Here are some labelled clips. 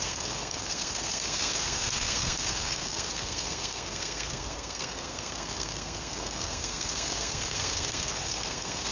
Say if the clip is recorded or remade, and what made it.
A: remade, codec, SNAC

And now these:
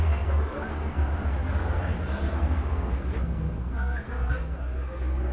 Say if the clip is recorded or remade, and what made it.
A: remade, codec, SNAC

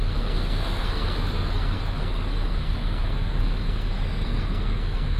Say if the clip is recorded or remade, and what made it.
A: remade, codec, SNAC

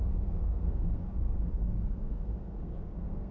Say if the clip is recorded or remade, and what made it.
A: remade, codec, SNAC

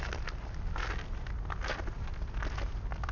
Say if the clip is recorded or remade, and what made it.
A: recorded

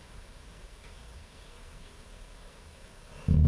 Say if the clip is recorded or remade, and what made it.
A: remade, codec, SNAC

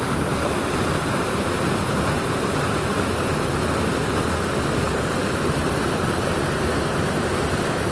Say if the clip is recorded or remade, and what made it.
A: recorded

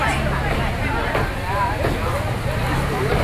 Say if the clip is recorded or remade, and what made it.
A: recorded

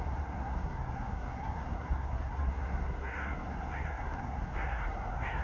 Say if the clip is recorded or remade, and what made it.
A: remade, codec, SNAC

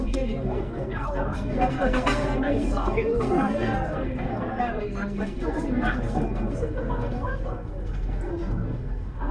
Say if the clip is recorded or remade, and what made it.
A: remade, codec, SNAC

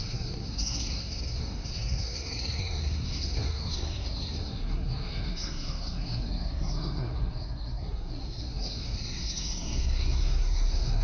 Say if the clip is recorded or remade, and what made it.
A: remade, codec, SNAC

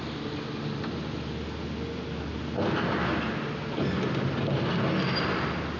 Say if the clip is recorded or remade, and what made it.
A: recorded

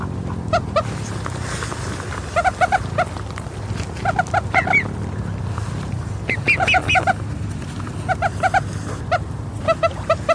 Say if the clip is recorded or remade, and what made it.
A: recorded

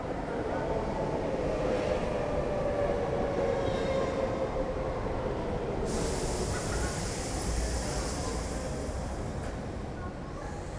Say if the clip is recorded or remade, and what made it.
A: recorded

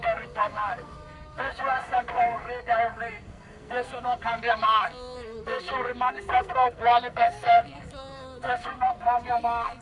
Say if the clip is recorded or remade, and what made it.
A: remade, codec, SNAC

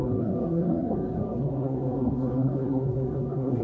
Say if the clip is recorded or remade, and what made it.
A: remade, codec, SNAC